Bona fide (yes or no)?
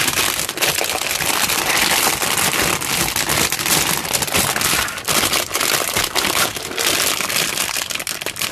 no